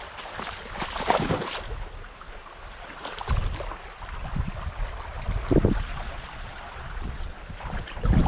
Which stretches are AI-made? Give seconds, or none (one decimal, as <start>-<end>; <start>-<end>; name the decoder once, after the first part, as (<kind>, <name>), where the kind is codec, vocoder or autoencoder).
5.9-7.4 (vocoder, Vocos)

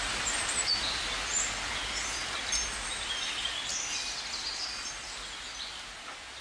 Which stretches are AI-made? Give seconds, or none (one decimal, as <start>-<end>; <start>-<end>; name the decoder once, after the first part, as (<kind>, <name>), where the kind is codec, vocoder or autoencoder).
none